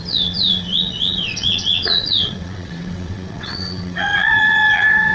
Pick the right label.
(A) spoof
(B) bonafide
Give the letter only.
A